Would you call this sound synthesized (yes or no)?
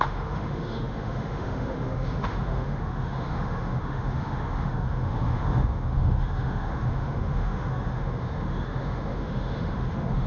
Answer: yes